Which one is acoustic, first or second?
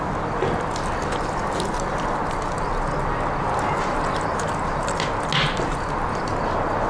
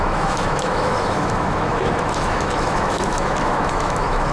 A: first